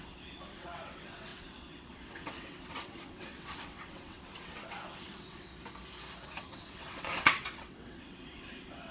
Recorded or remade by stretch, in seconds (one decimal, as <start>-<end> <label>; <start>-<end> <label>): 0.0-5.5 remade; 5.5-6.4 recorded; 6.4-8.9 remade